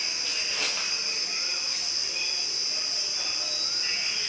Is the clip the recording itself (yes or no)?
yes